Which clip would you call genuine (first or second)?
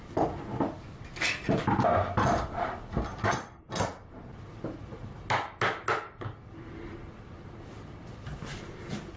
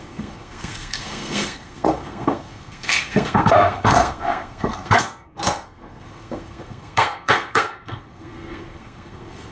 first